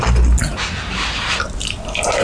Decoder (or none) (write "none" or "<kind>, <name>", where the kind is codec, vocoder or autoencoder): none